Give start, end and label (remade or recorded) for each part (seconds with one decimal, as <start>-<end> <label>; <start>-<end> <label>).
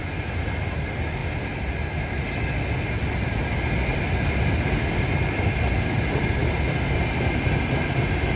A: 0.0-8.4 recorded